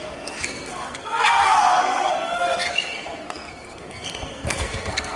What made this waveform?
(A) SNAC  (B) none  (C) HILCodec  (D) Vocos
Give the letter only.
A